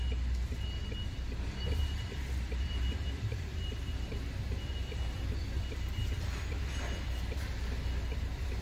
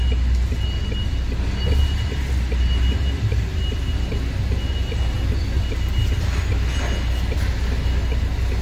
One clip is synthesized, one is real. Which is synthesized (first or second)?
first